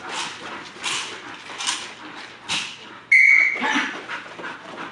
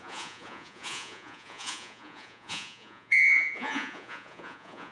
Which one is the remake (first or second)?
second